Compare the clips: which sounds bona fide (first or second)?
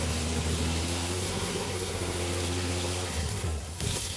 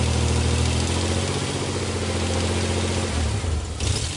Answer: second